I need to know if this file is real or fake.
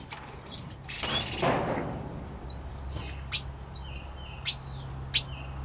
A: real